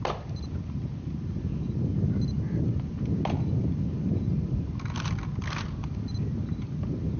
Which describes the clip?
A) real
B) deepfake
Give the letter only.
A